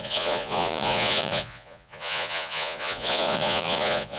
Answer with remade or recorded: remade